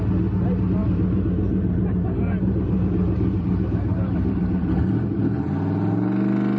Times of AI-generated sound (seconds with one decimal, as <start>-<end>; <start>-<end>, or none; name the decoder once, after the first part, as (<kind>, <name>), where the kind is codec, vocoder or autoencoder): 0.8-4.8 (vocoder, BigVGAN v2)